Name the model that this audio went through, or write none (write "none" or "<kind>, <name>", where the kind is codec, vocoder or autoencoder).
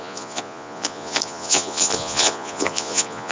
vocoder, Vocos